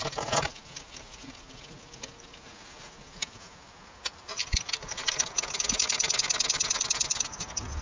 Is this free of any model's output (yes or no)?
yes